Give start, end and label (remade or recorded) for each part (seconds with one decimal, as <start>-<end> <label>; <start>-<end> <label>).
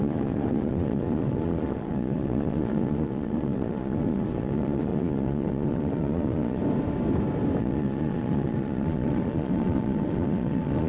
0.0-6.6 remade; 6.6-7.6 recorded; 7.6-10.9 remade